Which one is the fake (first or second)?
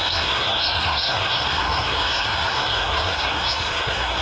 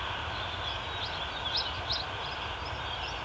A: first